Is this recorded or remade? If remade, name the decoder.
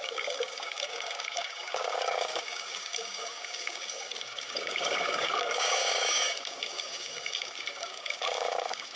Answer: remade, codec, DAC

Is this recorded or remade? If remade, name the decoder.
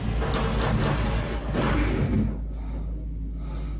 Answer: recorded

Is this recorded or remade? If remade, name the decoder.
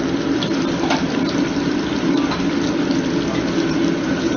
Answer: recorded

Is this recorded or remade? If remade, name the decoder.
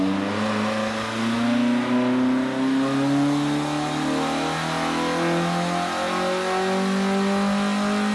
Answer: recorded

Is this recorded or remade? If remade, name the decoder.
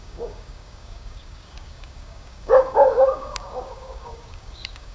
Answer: remade, codec, DAC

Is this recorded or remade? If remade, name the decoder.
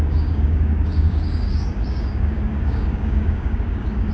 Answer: remade, codec, DAC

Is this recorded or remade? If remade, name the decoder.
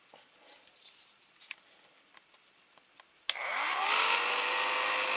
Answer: recorded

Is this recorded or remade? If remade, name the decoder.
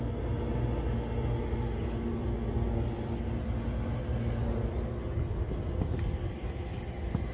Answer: recorded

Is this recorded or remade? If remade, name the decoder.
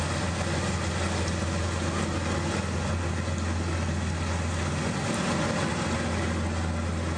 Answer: recorded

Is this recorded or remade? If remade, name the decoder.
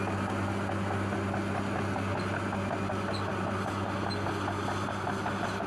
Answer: recorded